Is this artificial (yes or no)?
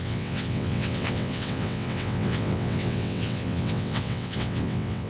yes